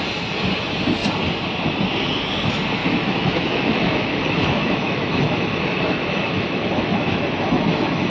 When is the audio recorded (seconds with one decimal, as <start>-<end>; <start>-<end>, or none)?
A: 0.0-2.8